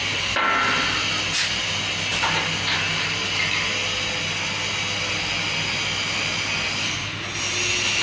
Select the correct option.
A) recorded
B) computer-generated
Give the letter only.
A